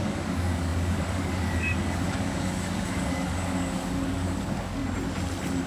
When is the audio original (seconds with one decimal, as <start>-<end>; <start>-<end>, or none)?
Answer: 4.8-5.7